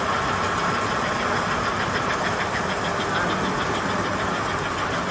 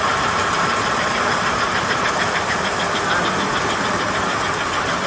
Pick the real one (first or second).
first